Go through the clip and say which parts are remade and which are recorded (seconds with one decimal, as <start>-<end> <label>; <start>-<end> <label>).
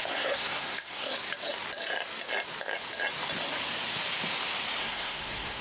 0.0-1.3 remade; 1.3-4.8 recorded; 4.8-5.6 remade